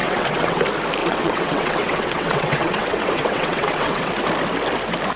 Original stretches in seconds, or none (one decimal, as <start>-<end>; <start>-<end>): 0.6-1.0; 4.1-5.2